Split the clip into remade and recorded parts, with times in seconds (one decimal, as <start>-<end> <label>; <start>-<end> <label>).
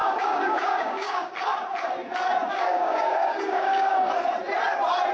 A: 0.0-1.3 remade; 1.3-2.5 recorded; 2.5-4.1 remade; 4.1-5.1 recorded